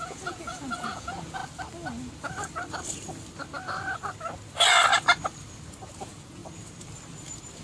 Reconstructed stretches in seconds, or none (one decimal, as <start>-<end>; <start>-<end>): 0.0-1.4; 6.0-6.4